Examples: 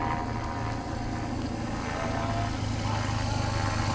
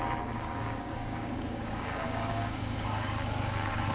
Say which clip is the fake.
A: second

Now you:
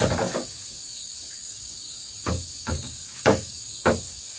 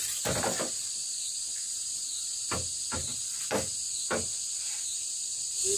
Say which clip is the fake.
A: first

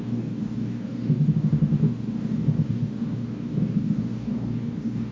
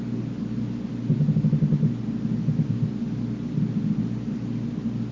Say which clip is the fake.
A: first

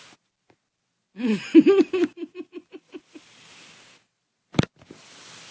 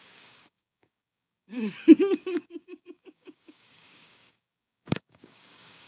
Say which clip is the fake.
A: second